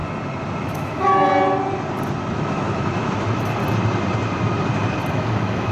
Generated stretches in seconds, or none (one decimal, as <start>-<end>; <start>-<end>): 0.6-1.3; 2.3-3.6; 5.1-5.7